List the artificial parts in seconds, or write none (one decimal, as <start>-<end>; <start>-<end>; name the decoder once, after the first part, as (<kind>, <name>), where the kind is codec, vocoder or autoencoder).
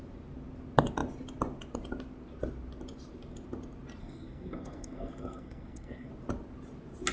4.0-6.1 (codec, SNAC)